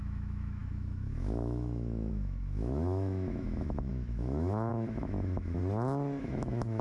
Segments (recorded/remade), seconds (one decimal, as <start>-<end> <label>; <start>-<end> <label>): 0.0-5.6 remade; 5.6-6.2 recorded; 6.2-6.8 remade